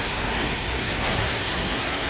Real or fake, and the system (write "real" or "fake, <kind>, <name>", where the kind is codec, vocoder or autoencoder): fake, codec, SNAC